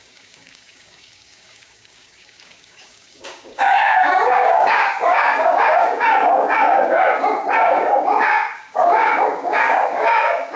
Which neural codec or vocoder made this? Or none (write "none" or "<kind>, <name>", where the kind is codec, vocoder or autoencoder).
codec, DAC